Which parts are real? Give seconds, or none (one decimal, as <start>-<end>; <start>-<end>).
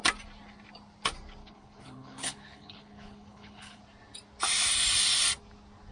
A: 0.0-1.4; 3.8-5.9